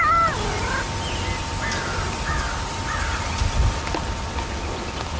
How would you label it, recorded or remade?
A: recorded